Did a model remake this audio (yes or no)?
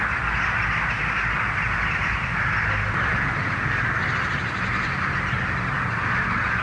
no